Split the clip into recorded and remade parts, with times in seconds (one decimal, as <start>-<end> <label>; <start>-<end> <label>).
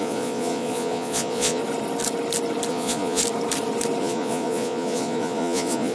0.0-1.6 remade; 1.6-2.7 recorded; 2.7-3.2 remade; 3.2-4.0 recorded; 4.0-5.9 remade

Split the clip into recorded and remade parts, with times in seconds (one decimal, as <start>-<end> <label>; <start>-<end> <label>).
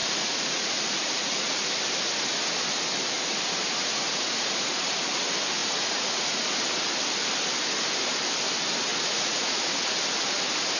0.0-1.6 remade; 1.6-3.8 recorded; 3.8-4.8 remade; 4.8-5.6 recorded; 5.6-6.4 remade; 6.4-8.9 recorded; 8.9-9.9 remade; 9.9-10.8 recorded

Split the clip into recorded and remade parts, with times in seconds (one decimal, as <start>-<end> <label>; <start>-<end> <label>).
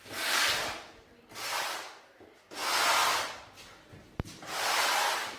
0.0-5.4 recorded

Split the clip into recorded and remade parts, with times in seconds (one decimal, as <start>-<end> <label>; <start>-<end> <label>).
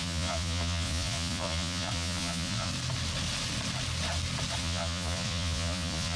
0.0-2.7 remade; 2.7-4.6 recorded; 4.6-6.2 remade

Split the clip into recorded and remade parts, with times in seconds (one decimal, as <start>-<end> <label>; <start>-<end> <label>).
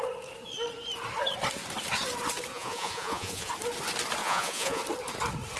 0.0-2.5 recorded; 2.5-3.5 remade; 3.5-4.2 recorded; 4.2-4.8 remade; 4.8-5.6 recorded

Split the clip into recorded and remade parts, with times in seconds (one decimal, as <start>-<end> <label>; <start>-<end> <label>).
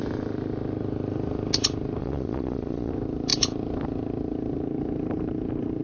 0.0-2.0 recorded; 2.0-2.9 remade; 2.9-5.8 recorded